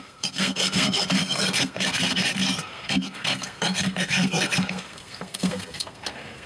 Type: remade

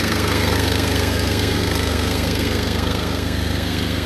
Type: remade